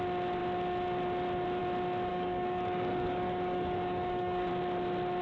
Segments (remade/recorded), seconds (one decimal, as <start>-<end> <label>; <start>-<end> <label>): 0.0-2.1 recorded; 2.1-4.5 remade; 4.5-5.2 recorded